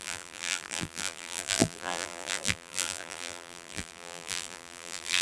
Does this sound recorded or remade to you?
remade